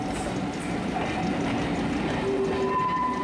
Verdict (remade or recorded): recorded